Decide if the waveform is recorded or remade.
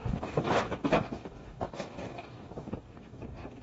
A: remade